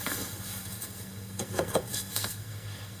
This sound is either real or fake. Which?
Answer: fake